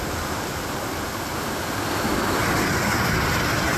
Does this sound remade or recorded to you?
recorded